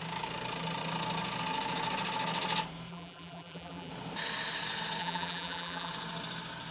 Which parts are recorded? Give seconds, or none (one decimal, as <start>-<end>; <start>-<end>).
0.0-2.9; 3.9-5.0; 5.9-6.7